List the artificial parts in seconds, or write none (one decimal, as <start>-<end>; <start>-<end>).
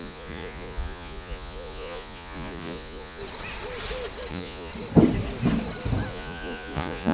0.0-3.2; 4.3-4.7; 6.1-7.1